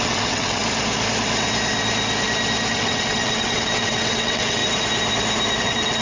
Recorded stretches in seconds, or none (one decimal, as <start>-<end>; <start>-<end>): 0.6-2.7; 4.6-5.6